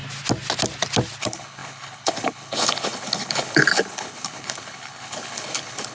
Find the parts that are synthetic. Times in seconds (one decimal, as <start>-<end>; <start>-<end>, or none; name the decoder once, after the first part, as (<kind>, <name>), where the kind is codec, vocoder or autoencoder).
1.2-5.9 (codec, HILCodec)